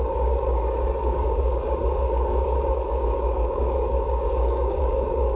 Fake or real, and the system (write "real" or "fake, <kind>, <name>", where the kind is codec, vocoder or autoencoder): fake, codec, DAC